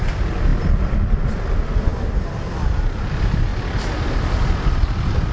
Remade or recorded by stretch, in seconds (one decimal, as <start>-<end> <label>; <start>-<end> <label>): 0.0-5.3 recorded